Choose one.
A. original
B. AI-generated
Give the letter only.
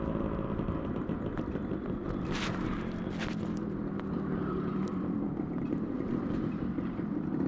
B